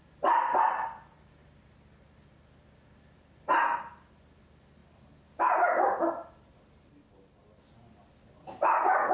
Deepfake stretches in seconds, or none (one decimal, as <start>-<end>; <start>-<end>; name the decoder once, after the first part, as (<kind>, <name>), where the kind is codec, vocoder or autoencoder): none